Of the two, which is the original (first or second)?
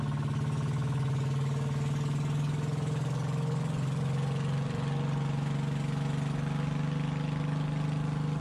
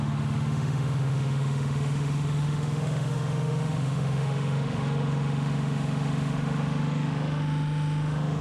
first